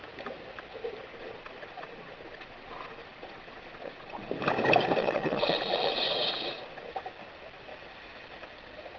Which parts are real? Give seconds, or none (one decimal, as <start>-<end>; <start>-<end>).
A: 0.0-1.1; 4.3-5.0; 6.9-9.0